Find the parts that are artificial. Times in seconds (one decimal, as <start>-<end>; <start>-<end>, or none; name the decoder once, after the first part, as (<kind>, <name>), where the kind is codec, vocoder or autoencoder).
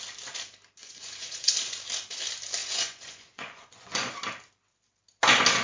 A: 0.8-1.5 (vocoder, Vocos); 2.6-4.1